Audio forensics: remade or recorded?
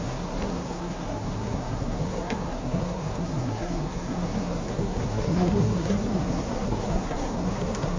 remade